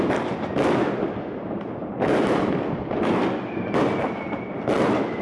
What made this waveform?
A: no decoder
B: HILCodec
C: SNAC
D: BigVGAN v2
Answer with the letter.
A